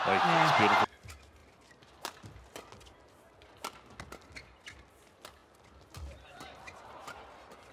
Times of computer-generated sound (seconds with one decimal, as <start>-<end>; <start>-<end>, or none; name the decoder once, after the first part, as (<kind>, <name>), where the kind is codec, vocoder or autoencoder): none